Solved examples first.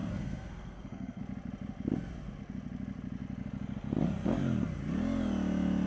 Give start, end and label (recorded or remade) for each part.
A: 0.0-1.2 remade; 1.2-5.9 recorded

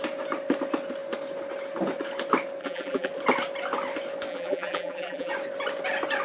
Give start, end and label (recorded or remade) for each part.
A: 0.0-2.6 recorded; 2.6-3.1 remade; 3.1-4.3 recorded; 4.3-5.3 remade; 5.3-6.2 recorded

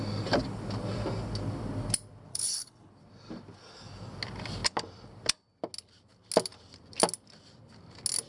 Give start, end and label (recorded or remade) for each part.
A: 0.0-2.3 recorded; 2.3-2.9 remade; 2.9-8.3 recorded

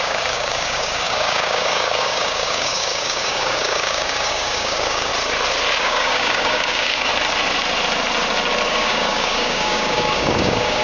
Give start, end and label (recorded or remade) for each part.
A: 0.0-5.1 remade; 5.1-5.8 recorded; 5.8-7.1 remade; 7.1-8.7 recorded; 8.7-10.8 remade

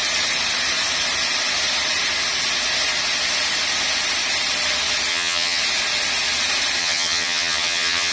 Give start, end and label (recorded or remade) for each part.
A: 0.0-5.1 recorded; 5.1-5.6 remade; 5.6-6.8 recorded; 6.8-8.1 remade

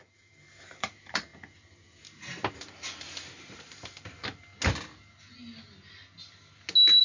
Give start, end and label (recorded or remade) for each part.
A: 0.0-1.3 remade; 1.3-2.5 recorded; 2.5-4.5 remade; 4.5-7.0 recorded